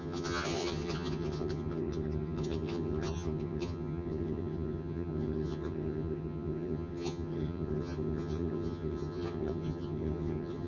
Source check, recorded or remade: remade